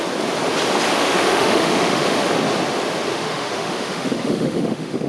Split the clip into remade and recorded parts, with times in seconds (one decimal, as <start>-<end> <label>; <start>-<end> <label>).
0.0-1.0 recorded; 1.0-2.3 remade; 2.3-3.1 recorded; 3.1-5.1 remade